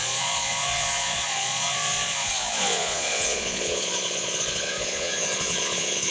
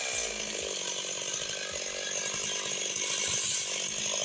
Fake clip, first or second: first